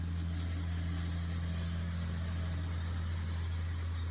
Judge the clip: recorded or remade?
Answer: recorded